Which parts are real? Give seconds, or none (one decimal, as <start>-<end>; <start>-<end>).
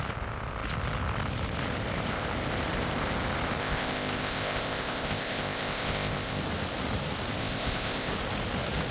0.0-3.6; 6.4-7.4; 8.1-8.9